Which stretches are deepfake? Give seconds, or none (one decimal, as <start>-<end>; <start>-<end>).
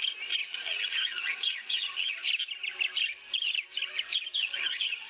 0.4-2.3; 4.4-5.1